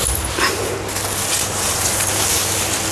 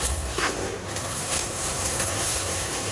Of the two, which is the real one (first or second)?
first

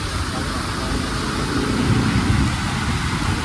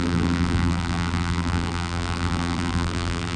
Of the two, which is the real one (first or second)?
first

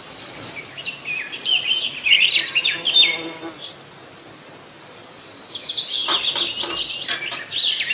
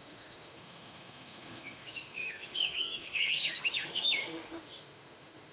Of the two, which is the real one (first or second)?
first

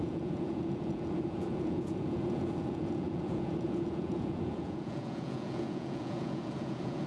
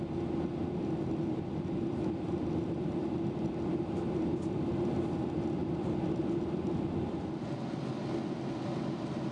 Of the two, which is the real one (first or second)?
second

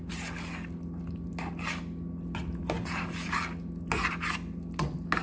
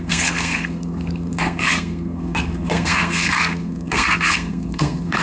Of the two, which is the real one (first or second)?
first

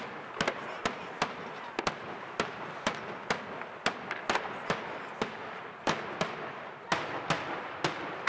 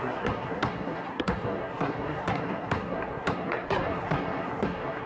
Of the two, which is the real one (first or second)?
first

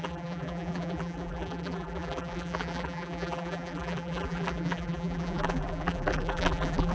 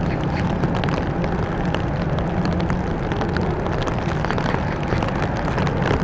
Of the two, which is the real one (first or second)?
second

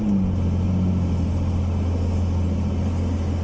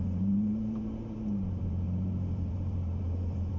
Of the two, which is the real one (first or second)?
first